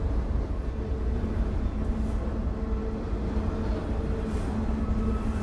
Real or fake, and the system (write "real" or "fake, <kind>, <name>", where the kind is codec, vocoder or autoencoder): real